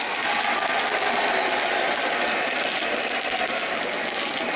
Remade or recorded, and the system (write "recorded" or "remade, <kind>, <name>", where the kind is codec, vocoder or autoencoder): recorded